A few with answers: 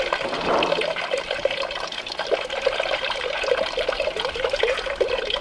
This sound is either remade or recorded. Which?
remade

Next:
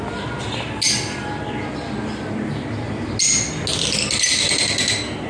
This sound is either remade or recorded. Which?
recorded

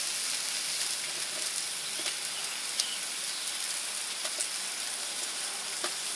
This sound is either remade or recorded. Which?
recorded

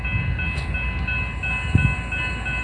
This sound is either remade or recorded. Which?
recorded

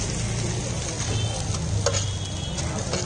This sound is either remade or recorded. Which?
recorded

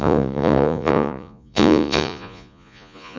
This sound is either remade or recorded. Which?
remade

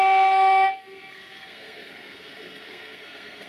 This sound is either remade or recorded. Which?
remade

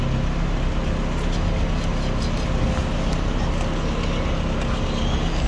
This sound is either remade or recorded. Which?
recorded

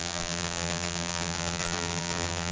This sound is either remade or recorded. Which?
remade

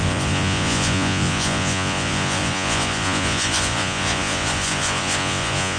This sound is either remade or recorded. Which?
remade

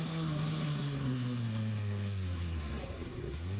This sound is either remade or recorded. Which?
remade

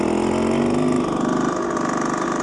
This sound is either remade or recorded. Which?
recorded